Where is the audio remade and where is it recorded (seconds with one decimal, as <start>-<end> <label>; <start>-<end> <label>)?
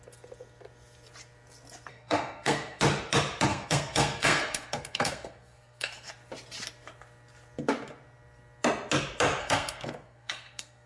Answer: 0.0-1.9 recorded; 1.9-2.8 remade; 2.8-3.5 recorded; 3.5-6.1 remade; 6.1-9.4 recorded; 9.4-10.9 remade